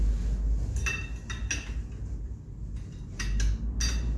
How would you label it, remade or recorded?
recorded